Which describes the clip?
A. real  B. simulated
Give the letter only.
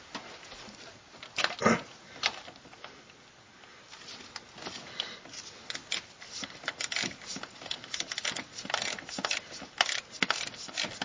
A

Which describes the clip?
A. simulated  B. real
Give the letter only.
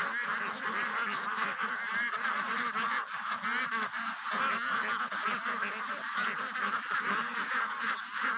B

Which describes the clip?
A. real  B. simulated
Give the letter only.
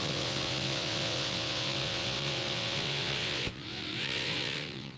B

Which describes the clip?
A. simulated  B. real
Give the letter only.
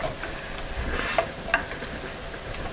B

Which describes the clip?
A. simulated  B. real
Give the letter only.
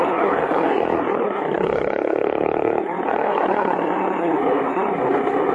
A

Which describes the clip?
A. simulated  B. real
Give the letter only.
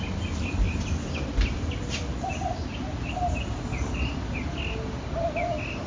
B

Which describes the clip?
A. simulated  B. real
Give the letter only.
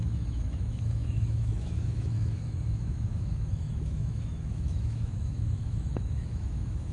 A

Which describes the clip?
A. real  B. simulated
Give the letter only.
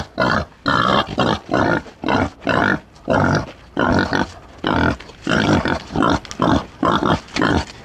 A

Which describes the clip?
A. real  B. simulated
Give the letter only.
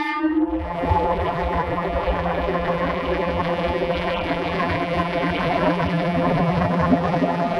B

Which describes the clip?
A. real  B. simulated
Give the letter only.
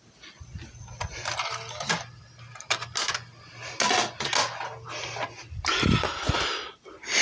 A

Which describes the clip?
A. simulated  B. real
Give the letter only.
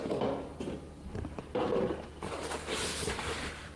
A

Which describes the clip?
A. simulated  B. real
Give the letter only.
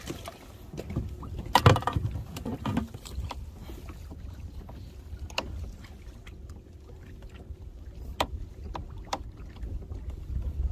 B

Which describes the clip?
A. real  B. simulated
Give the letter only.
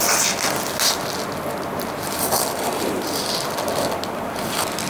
A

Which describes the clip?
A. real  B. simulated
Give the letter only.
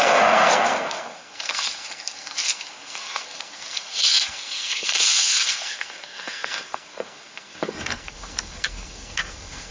B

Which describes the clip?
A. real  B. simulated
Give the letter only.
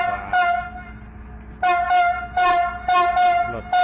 A